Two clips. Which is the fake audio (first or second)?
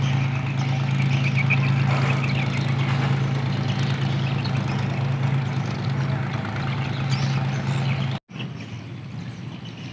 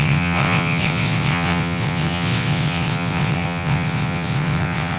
second